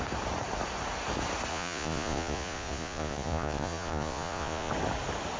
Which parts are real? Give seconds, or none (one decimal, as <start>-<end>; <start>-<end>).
0.0-1.5; 4.7-5.4